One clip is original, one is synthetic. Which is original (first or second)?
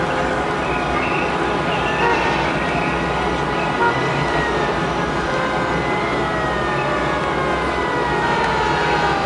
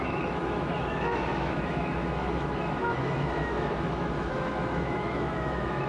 first